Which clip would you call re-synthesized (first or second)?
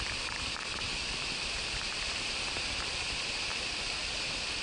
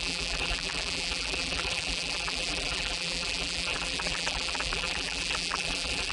second